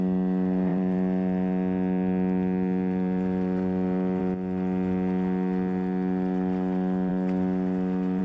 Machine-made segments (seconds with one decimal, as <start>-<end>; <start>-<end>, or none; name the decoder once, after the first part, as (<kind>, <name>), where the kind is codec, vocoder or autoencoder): 0.7-4.2 (vocoder, BigVGAN v2)